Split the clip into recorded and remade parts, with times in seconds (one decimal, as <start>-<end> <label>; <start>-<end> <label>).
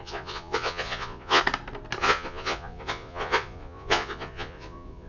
0.0-1.4 remade; 1.4-2.0 recorded; 2.0-5.1 remade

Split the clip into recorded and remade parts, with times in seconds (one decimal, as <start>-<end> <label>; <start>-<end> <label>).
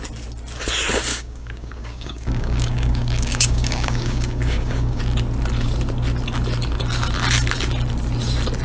0.0-1.1 recorded; 1.1-5.0 remade; 5.0-8.6 recorded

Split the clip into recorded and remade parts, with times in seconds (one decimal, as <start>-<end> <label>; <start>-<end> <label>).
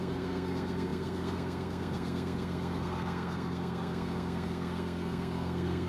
0.0-5.9 remade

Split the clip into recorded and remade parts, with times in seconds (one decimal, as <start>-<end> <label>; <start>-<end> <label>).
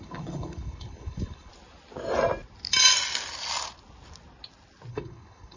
0.0-1.5 remade; 1.5-4.9 recorded; 4.9-5.6 remade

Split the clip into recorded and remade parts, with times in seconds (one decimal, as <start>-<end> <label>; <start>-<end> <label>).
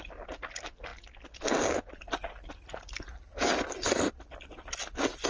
0.0-5.3 recorded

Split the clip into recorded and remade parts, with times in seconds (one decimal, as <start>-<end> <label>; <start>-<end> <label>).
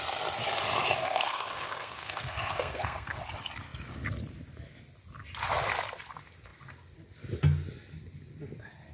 0.0-1.0 recorded; 1.0-3.2 remade; 3.2-8.9 recorded